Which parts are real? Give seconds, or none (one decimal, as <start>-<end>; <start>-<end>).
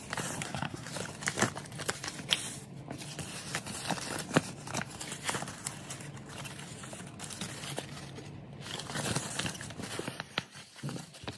0.0-0.4; 0.9-11.4